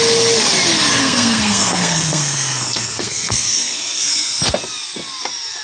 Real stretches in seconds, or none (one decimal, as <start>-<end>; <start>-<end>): 0.0-1.0; 4.4-5.6